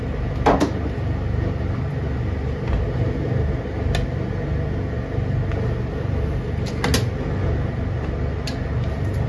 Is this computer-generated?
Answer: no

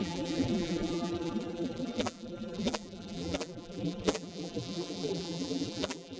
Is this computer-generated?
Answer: yes